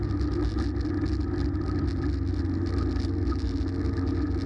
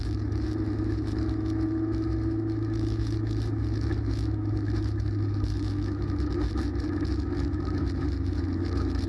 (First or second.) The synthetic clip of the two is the second